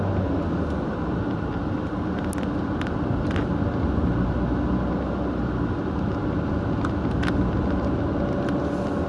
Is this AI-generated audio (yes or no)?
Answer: no